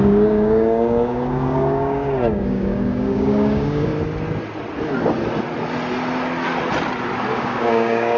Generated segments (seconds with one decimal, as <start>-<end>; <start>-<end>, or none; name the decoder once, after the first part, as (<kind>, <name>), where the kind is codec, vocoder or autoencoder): 0.0-3.9 (codec, DAC); 7.3-8.2

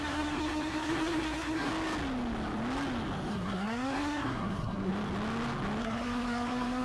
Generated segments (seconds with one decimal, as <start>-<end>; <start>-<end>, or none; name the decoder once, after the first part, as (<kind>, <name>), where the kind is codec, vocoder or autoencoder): 0.0-1.7 (codec, SNAC); 3.3-4.9; 5.8-6.8

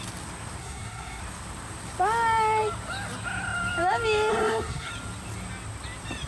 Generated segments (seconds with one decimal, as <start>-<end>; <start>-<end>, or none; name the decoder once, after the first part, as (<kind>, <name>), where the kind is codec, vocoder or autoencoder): 0.6-1.2 (codec, SNAC); 4.3-4.9

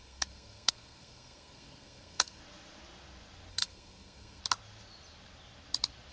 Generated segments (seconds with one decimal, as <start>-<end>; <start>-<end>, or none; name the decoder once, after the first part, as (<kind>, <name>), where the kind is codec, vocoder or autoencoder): 0.0-2.4 (codec, SNAC); 3.5-4.4

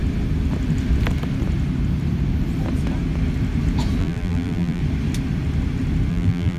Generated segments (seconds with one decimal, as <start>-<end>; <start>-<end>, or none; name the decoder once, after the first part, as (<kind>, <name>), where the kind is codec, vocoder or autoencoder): 4.0-4.8 (vocoder, BigVGAN v2); 6.1-6.6